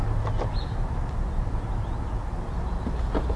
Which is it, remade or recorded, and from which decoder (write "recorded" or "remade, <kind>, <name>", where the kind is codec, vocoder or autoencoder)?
recorded